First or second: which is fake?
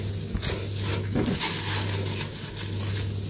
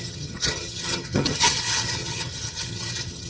second